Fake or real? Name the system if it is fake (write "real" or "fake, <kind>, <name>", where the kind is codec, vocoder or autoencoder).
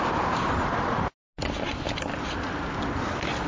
real